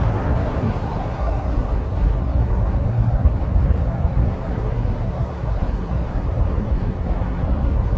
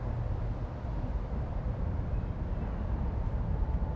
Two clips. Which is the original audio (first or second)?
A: second